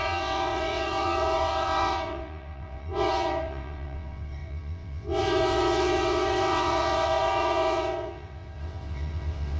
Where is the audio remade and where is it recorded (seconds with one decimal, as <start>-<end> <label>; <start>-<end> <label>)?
0.0-9.6 remade

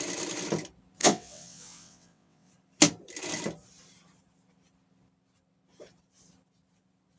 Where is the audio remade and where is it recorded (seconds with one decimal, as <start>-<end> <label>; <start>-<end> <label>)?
0.0-1.0 recorded; 1.0-2.5 remade; 2.5-7.2 recorded

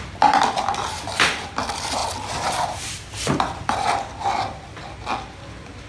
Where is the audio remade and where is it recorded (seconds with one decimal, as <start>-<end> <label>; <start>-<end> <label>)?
0.0-5.9 recorded

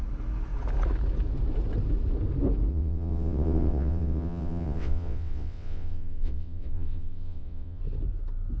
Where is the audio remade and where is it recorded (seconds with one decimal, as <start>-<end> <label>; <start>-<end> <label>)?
0.0-2.7 recorded; 2.7-7.8 remade; 7.8-8.6 recorded

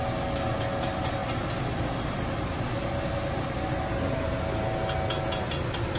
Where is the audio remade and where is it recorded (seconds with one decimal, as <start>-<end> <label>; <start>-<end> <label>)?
0.0-6.0 recorded